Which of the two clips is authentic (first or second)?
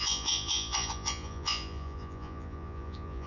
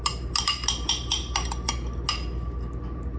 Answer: second